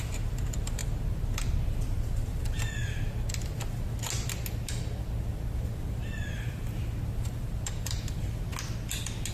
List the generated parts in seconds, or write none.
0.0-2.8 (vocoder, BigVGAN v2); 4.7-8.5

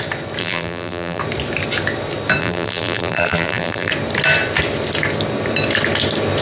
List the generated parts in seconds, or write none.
0.4-1.2 (vocoder, BigVGAN v2); 2.4-3.9

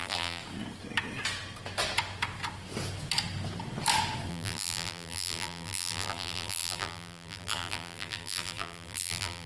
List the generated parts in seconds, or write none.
0.0-0.4 (vocoder, BigVGAN v2); 4.3-9.5